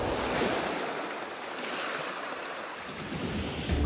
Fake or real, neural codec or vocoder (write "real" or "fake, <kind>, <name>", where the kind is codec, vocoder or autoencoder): real